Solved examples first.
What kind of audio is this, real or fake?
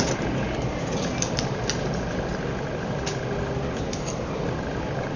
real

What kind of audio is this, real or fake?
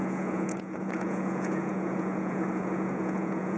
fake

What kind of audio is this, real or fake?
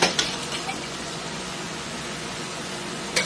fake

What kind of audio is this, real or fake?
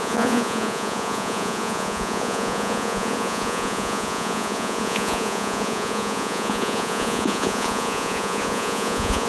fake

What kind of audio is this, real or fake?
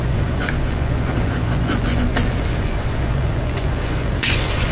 fake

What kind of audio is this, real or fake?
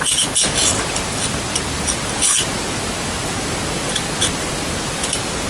real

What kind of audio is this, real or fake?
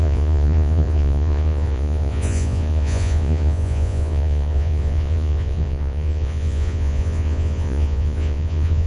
fake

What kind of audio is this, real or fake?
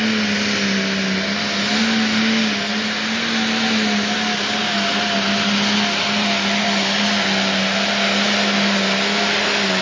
real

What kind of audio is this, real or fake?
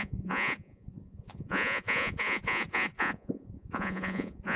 fake